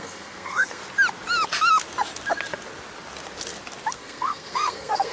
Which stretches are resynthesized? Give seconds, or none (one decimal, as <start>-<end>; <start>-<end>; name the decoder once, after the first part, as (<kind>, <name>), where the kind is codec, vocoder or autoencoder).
0.0-0.8 (codec, SNAC); 3.9-5.1